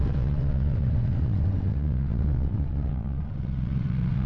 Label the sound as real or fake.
fake